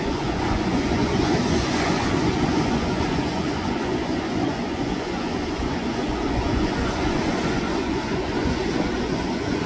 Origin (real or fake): fake